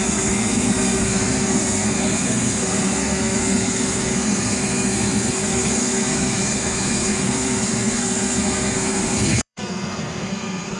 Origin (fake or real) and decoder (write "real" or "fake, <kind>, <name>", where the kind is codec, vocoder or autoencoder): fake, codec, SNAC